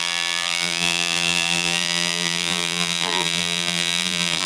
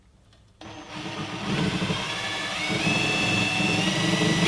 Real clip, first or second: second